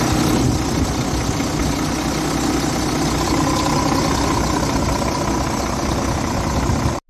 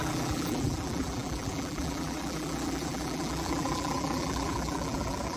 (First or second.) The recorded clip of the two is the first